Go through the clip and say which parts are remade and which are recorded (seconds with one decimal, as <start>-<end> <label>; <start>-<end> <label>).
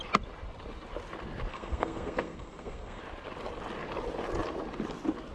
0.0-1.5 recorded; 1.5-3.0 remade; 3.0-5.3 recorded